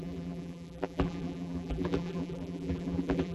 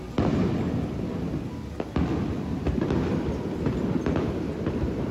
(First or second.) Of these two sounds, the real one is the second